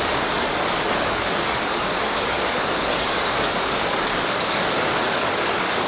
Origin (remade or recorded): remade